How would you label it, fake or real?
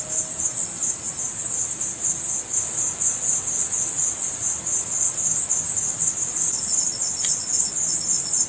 real